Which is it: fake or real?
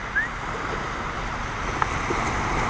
real